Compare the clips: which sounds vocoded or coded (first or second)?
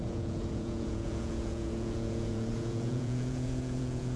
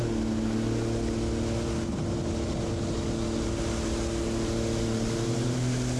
first